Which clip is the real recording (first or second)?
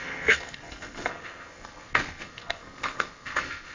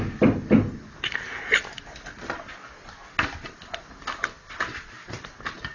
second